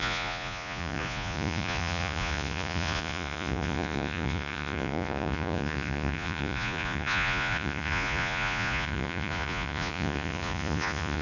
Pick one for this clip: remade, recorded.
remade